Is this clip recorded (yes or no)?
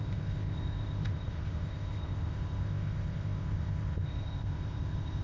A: no